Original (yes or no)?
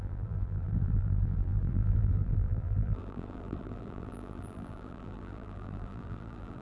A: no